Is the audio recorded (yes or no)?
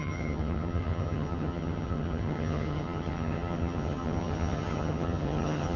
no